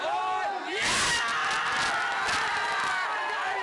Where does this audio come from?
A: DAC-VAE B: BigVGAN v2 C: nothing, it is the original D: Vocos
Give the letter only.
C